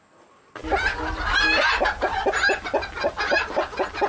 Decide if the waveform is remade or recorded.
recorded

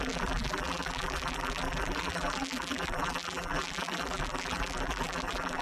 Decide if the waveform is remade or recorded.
remade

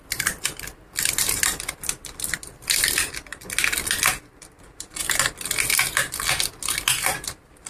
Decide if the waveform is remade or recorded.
recorded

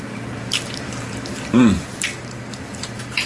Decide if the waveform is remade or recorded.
remade